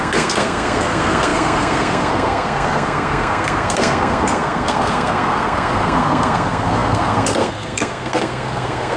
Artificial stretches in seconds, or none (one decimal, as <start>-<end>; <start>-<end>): 0.0-9.0